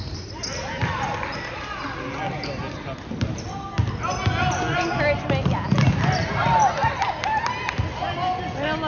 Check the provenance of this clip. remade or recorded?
recorded